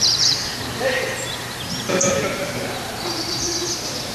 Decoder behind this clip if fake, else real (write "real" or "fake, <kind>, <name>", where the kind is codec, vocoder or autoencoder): fake, vocoder, BigVGAN v2